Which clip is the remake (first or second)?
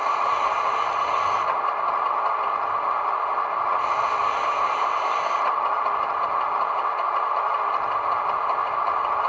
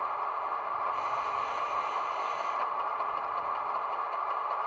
second